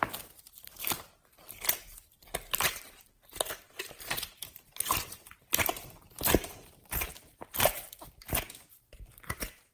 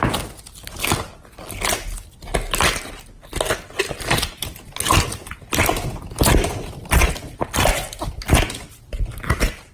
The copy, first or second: first